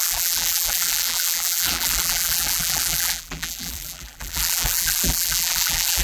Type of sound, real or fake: fake